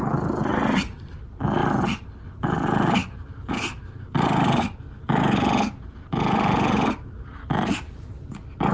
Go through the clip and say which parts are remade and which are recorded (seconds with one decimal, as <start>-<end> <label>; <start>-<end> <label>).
0.0-0.5 recorded; 0.5-1.2 remade; 1.2-8.7 recorded